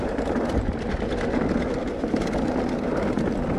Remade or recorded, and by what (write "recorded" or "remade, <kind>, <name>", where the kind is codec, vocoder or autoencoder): recorded